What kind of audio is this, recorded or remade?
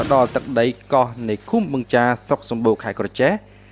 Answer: recorded